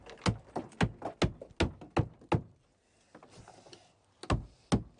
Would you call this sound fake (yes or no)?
no